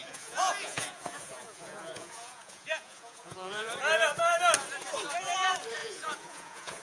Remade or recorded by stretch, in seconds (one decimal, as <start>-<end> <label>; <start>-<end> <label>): 0.0-3.7 remade; 3.7-5.8 recorded; 5.8-6.8 remade